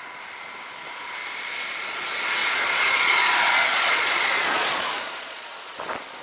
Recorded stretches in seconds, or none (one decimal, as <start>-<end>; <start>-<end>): 0.0-2.4; 3.3-3.7; 5.5-6.2